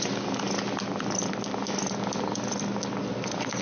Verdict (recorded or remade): recorded